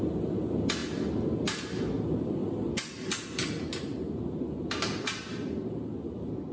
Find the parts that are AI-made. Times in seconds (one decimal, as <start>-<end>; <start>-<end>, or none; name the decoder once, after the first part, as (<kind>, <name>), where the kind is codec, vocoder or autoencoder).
none